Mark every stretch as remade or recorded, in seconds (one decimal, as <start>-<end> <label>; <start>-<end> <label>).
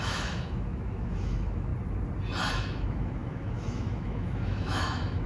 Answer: 0.0-1.7 remade; 1.7-2.5 recorded; 2.5-5.3 remade